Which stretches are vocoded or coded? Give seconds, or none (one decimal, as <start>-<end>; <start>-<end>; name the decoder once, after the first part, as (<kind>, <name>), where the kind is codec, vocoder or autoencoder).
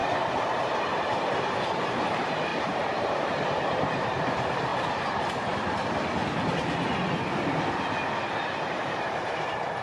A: 0.0-4.7 (vocoder, BigVGAN v2); 8.7-9.8